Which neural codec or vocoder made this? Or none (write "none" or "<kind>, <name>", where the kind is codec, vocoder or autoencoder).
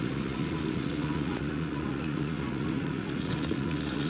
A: vocoder, Vocos